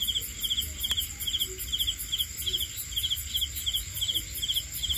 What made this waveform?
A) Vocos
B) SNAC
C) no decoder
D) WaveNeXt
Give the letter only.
C